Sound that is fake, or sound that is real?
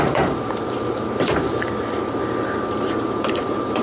fake